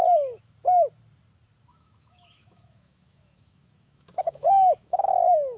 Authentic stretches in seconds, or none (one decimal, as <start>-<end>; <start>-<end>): 0.0-1.7; 5.1-5.6